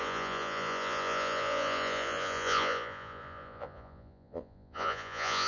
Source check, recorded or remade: remade